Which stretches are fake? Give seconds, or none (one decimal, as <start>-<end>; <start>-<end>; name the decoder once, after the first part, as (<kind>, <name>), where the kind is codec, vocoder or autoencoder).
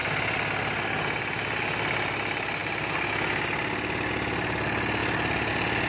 none